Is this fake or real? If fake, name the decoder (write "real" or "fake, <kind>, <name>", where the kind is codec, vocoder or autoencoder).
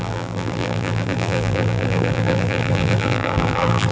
fake, vocoder, BigVGAN v2